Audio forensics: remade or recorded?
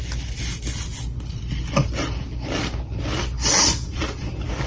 recorded